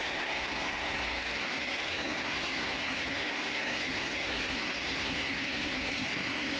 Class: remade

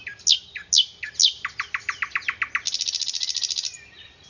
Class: recorded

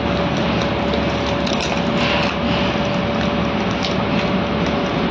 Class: recorded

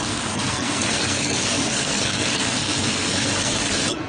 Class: remade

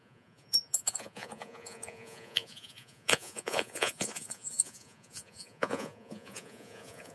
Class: remade